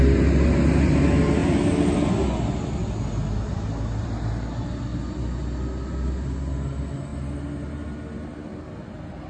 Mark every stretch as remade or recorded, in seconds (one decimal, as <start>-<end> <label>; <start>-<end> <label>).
0.0-9.3 recorded